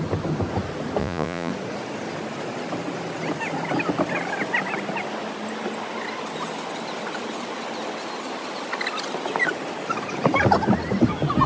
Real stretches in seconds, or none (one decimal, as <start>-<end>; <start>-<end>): 0.0-1.0; 1.5-11.5